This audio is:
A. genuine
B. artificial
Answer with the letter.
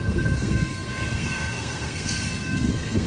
B